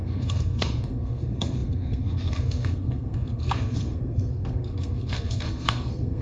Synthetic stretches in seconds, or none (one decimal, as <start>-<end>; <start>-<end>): 0.0-6.2